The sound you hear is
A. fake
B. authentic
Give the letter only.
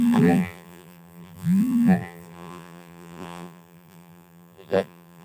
A